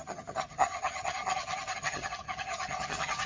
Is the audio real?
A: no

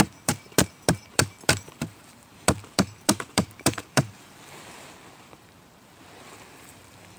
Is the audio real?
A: no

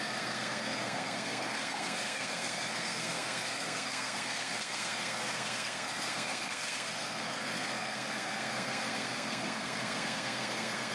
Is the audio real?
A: no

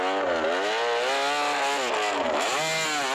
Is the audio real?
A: yes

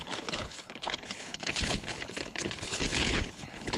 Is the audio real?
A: no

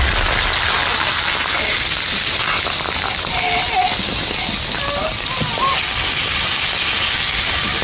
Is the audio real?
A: yes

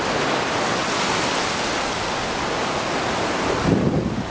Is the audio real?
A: yes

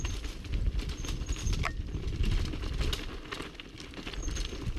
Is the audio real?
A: yes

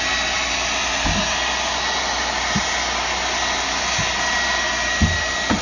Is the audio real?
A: yes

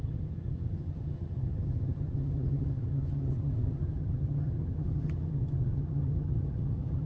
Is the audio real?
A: no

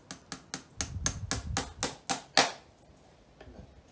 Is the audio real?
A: yes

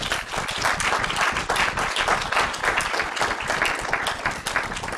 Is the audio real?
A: yes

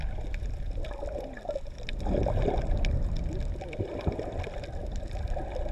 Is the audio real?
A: yes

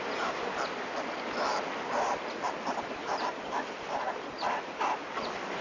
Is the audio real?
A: yes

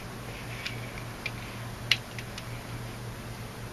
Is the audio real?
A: yes